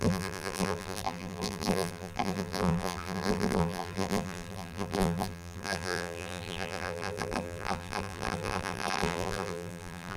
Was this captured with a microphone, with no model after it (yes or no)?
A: no